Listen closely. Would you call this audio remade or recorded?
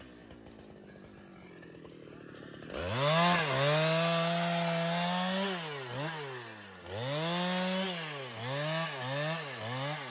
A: recorded